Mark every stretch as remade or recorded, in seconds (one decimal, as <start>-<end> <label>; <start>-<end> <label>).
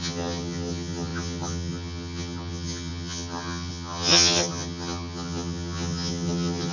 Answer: 0.0-6.7 remade